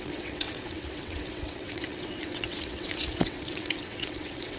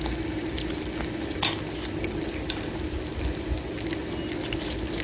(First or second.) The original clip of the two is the second